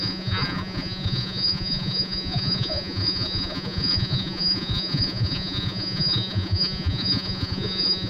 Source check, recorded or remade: remade